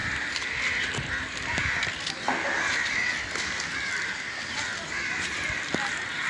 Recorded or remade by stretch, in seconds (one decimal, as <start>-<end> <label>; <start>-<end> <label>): 0.0-6.3 recorded